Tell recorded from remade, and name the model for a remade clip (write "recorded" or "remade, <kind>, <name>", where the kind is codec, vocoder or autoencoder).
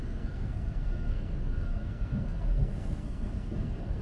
remade, codec, SNAC